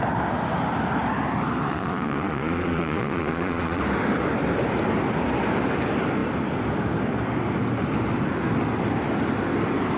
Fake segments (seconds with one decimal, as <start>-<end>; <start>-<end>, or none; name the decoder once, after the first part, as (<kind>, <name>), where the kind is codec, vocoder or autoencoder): 1.7-3.8 (vocoder, Vocos)